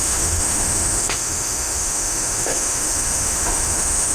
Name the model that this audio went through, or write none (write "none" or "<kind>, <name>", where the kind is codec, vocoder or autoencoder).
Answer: autoencoder, DAC-VAE